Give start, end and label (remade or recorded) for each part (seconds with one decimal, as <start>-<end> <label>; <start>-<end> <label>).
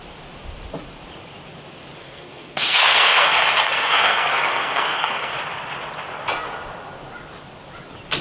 0.0-2.0 recorded; 2.0-5.3 remade; 5.3-8.2 recorded